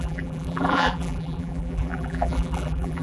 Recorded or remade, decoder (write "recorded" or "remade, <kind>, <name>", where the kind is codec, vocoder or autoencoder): remade, vocoder, BigVGAN v2